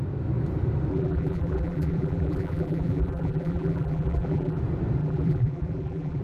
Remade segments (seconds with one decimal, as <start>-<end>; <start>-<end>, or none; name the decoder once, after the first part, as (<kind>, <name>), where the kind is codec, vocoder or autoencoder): 0.9-4.6 (vocoder, BigVGAN v2); 5.0-6.2